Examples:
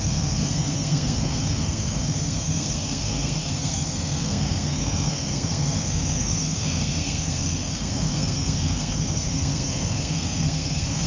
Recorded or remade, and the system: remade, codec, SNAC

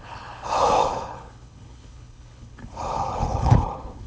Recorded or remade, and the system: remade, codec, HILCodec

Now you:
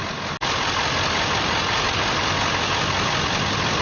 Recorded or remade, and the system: recorded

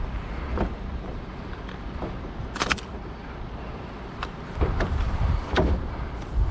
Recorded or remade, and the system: remade, vocoder, BigVGAN v2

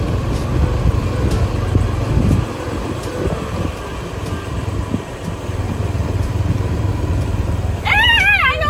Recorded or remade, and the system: remade, vocoder, BigVGAN v2